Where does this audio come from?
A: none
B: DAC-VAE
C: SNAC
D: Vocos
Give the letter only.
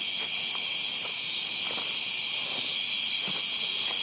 A